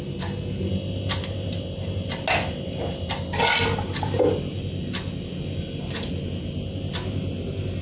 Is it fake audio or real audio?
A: real